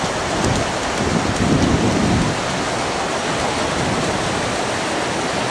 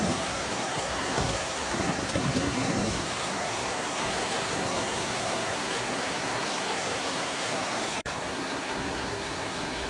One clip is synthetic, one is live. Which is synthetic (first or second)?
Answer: second